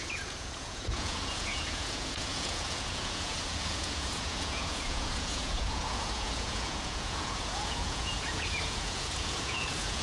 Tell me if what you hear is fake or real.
fake